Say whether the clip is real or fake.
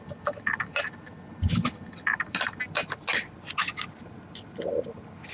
real